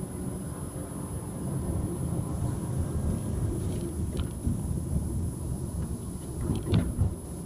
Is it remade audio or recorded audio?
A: recorded